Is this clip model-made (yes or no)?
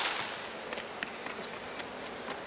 no